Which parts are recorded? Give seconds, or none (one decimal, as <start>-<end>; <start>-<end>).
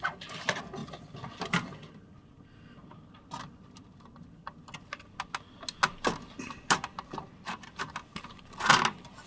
0.0-9.3